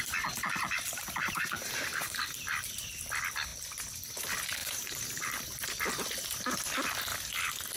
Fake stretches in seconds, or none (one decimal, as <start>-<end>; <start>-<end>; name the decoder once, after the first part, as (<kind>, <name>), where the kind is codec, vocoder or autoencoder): 1.0-2.2 (vocoder, BigVGAN v2); 4.6-5.8